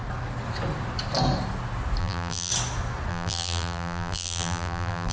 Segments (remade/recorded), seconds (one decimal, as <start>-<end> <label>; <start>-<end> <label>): 0.0-2.0 recorded; 2.0-2.5 remade; 2.5-3.1 recorded; 3.1-5.1 remade